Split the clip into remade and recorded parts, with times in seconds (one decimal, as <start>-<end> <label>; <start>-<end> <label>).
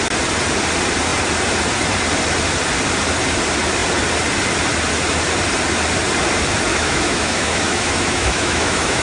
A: 0.0-6.7 recorded; 6.7-9.0 remade